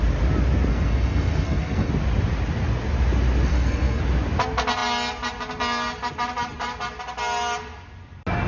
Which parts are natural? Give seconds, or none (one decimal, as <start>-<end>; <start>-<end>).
0.0-0.7; 1.9-3.5; 4.0-8.5